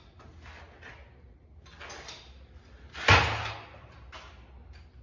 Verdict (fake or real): real